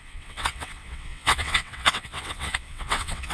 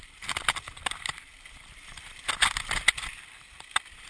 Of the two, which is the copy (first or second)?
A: first